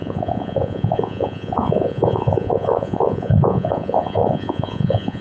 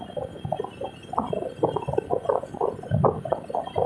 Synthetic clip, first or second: first